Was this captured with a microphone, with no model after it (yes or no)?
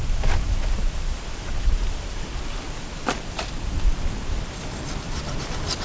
yes